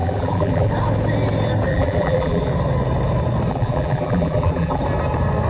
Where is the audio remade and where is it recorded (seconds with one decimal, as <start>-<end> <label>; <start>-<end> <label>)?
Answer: 0.0-0.7 remade; 0.7-1.7 recorded; 1.7-2.5 remade; 2.5-3.5 recorded; 3.5-4.8 remade; 4.8-5.5 recorded